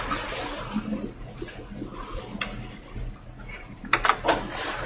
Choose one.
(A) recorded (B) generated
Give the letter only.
A